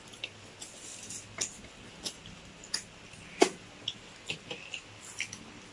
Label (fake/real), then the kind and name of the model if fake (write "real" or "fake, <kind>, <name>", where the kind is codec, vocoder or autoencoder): real